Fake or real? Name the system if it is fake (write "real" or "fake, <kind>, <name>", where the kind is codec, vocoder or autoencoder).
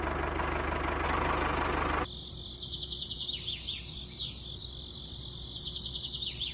real